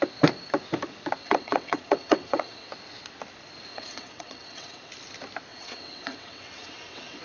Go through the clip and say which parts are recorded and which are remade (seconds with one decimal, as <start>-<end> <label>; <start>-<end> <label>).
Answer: 0.0-1.2 recorded; 1.2-2.7 remade; 2.7-3.7 recorded; 3.7-4.9 remade; 4.9-5.5 recorded; 5.5-7.2 remade